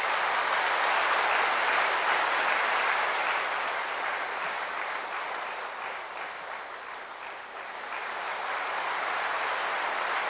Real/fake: real